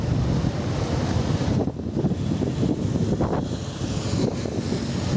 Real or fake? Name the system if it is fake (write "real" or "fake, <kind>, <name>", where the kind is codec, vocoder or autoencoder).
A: real